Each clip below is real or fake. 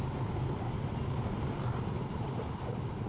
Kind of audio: real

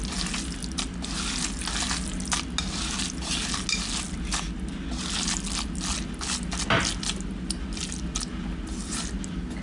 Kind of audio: real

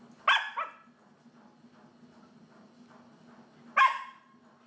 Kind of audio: real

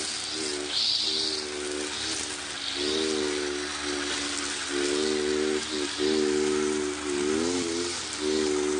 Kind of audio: real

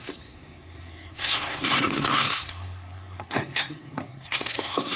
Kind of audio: fake